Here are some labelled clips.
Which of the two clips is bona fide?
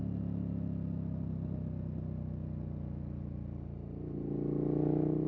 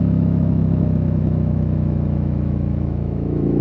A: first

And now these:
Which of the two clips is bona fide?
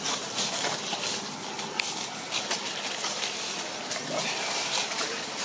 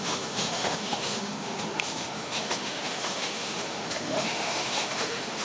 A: first